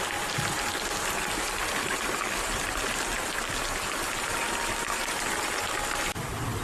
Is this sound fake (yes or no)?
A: yes